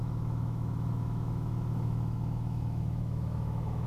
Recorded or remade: remade